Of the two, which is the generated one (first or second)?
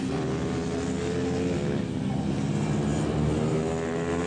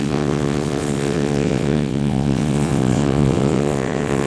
second